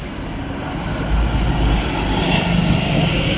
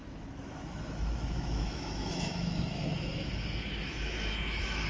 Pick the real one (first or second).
first